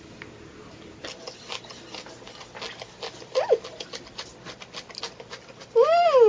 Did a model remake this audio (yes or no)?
no